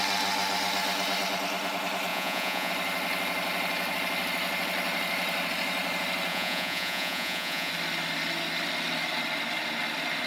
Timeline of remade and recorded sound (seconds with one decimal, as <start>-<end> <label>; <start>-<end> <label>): 0.0-2.1 recorded; 2.1-2.7 remade; 2.7-6.3 recorded; 6.3-7.7 remade; 7.7-10.3 recorded